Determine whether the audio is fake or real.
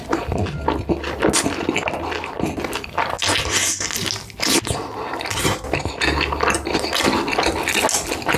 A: real